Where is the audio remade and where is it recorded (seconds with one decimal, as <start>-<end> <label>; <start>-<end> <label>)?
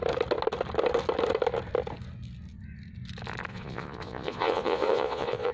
0.0-3.5 recorded; 3.5-5.5 remade